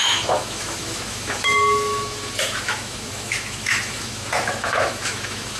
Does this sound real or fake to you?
fake